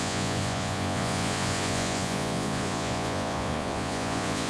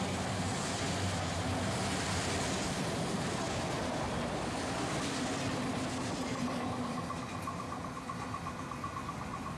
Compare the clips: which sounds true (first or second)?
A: second